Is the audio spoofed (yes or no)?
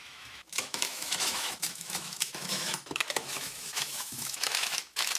yes